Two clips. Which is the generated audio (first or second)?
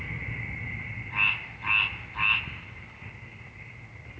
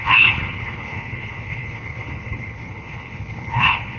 second